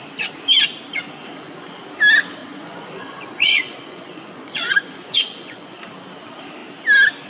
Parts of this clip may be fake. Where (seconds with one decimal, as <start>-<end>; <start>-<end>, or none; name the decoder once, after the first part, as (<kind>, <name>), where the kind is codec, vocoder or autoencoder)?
1.2-1.8 (vocoder, Vocos); 2.4-5.8